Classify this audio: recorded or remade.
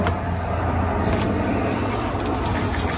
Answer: recorded